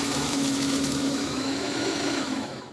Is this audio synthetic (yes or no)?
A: yes